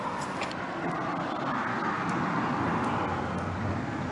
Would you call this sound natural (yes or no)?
yes